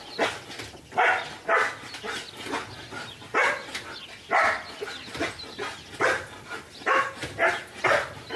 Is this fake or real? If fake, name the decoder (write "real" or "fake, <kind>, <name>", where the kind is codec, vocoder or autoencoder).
real